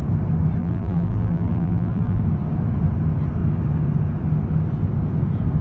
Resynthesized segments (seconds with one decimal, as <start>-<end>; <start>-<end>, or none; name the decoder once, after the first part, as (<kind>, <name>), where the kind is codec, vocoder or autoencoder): 0.6-2.2 (vocoder, BigVGAN v2)

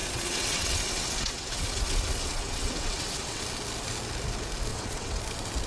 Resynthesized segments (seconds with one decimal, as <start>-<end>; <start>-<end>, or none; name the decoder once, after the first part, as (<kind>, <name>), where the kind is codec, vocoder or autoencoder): 0.0-3.4 (vocoder, WaveNeXt); 4.7-5.2